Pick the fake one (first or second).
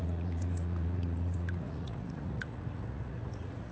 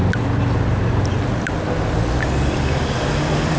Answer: first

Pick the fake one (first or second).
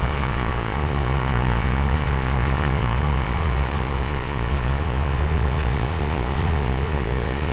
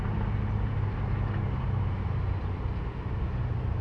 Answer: first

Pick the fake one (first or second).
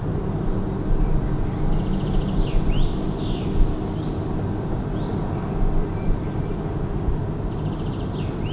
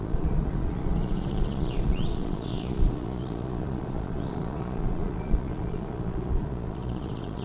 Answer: second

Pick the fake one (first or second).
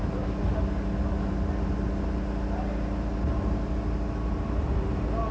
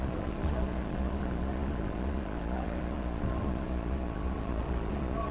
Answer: second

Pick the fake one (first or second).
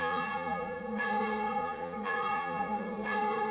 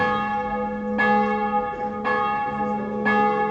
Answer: first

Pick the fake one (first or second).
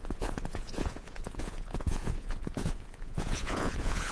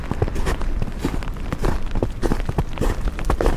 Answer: first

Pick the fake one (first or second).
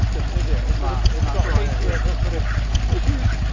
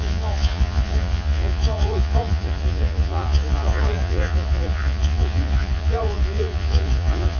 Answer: second